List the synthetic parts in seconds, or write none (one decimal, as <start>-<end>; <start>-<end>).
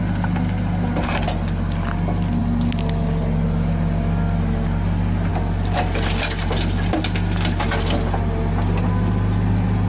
none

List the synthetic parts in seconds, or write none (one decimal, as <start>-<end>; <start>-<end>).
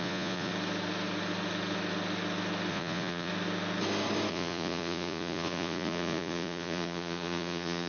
0.0-0.5; 2.7-3.3; 4.3-7.9